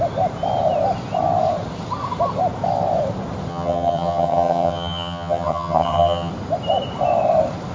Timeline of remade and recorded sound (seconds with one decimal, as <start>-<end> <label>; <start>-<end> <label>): 0.0-3.5 recorded; 3.5-6.3 remade; 6.3-7.7 recorded